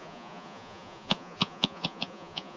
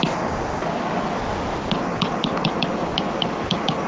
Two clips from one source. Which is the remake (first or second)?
first